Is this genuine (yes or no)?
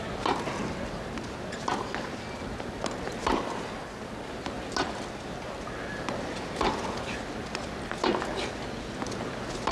yes